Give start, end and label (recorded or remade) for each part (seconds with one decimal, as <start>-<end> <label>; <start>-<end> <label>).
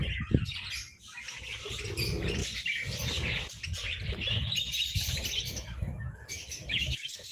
0.0-5.5 recorded; 5.5-7.3 remade